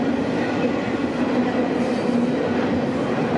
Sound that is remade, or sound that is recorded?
recorded